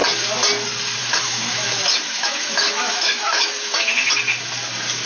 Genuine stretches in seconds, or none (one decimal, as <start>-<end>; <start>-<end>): 0.0-1.0; 4.1-5.1